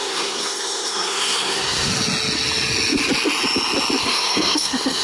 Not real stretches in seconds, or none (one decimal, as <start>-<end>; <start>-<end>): 0.0-1.9; 4.0-5.0